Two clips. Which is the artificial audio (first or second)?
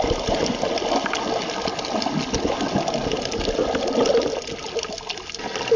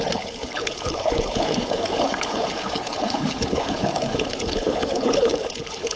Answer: second